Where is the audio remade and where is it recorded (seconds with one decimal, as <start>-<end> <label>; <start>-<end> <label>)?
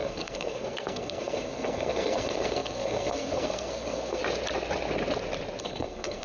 0.0-4.2 remade; 4.2-5.6 recorded; 5.6-6.2 remade